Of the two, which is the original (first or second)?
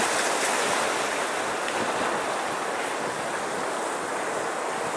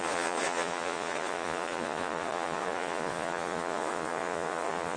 first